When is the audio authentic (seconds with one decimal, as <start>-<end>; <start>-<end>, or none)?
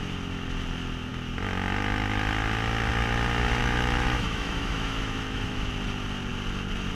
0.0-3.6; 5.7-6.9